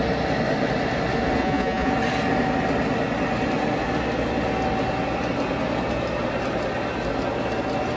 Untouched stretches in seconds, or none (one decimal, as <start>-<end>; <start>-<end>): 0.0-1.4; 1.9-8.0